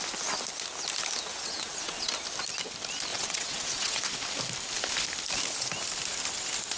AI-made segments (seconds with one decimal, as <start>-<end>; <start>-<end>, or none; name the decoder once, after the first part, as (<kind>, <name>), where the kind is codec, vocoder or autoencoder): 1.3-2.1 (vocoder, WaveNeXt); 3.1-4.0